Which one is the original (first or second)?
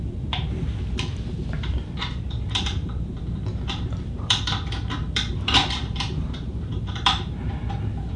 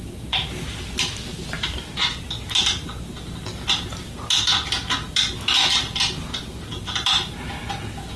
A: second